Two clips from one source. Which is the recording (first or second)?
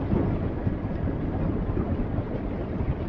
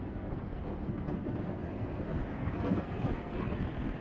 first